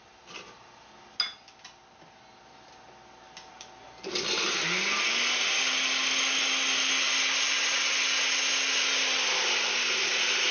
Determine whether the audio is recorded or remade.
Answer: recorded